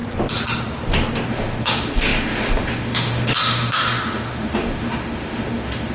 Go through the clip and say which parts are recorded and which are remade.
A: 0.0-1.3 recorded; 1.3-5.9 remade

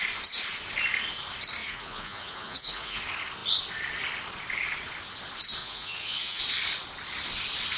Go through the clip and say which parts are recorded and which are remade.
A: 0.0-1.6 recorded; 1.6-3.0 remade; 3.0-5.6 recorded; 5.6-6.4 remade; 6.4-7.8 recorded

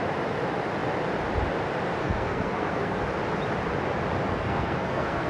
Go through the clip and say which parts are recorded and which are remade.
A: 0.0-2.0 recorded; 2.0-3.0 remade; 3.0-4.3 recorded; 4.3-5.3 remade

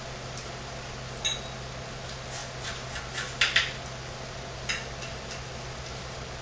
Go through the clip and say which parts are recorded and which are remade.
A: 0.0-6.4 recorded

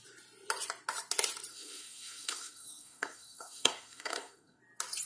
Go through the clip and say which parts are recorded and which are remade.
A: 0.0-1.5 recorded; 1.5-4.6 remade; 4.6-5.1 recorded

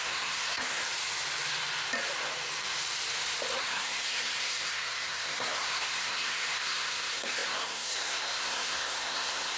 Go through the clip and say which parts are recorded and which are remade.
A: 0.0-0.8 remade; 0.8-3.6 recorded; 3.6-9.6 remade

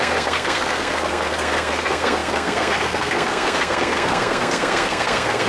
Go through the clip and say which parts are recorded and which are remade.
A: 0.0-5.5 remade

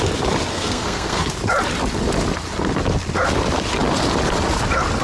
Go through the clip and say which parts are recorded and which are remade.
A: 0.0-0.5 recorded; 0.5-1.3 remade; 1.3-5.0 recorded